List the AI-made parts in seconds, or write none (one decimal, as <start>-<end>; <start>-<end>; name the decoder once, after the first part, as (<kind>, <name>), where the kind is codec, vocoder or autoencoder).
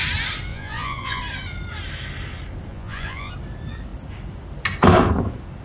0.5-1.2 (vocoder, Vocos); 2.7-3.3